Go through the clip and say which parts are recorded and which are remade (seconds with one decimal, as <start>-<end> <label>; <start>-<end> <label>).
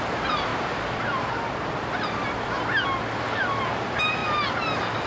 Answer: 0.0-0.5 remade; 0.5-3.6 recorded; 3.6-4.2 remade; 4.2-5.1 recorded